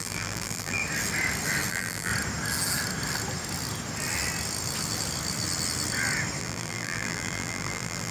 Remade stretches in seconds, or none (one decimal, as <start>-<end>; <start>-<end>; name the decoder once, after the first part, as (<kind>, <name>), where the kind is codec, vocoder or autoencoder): 0.0-0.8 (vocoder, BigVGAN v2); 1.7-2.1; 6.4-8.1